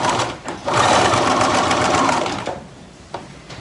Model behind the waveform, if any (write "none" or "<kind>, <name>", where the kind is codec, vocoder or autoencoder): vocoder, BigVGAN v2